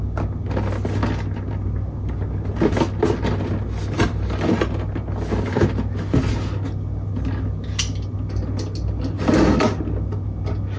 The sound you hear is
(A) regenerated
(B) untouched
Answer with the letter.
B